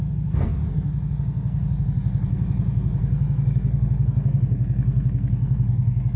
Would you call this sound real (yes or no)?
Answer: no